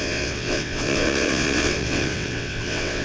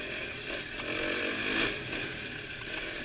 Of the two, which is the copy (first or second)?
first